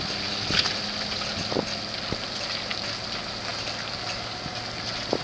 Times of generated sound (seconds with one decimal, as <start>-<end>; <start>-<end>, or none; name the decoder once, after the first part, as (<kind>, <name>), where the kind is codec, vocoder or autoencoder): none